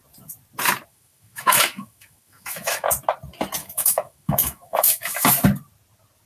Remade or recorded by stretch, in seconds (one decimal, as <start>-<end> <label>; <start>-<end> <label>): 0.0-0.9 recorded; 0.9-2.9 remade; 2.9-3.6 recorded; 3.6-5.3 remade; 5.3-6.3 recorded